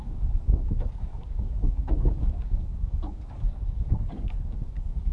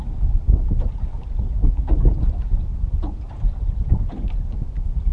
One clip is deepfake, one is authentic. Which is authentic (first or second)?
second